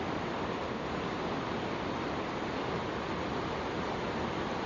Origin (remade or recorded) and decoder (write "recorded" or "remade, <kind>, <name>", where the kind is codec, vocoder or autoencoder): recorded